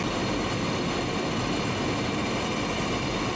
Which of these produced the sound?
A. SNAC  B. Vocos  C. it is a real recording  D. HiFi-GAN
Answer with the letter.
C